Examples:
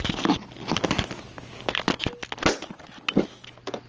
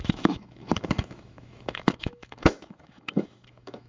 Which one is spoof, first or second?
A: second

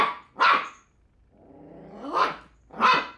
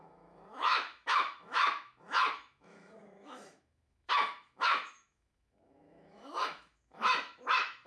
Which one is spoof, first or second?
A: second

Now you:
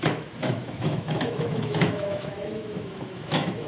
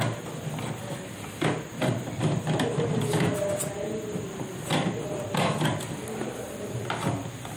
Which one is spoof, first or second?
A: first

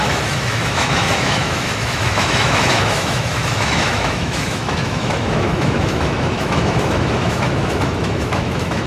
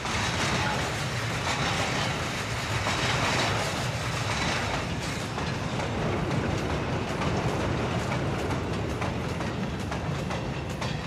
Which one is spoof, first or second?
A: first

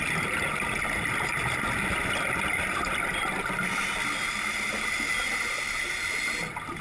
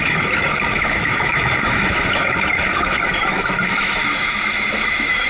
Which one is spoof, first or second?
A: second